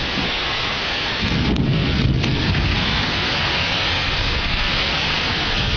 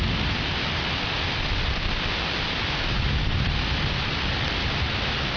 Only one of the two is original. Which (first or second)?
second